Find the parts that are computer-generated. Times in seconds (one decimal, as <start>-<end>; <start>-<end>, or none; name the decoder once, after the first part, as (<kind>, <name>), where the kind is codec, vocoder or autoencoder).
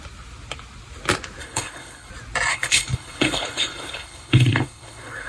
1.4-2.1 (codec, HILCodec); 2.5-5.3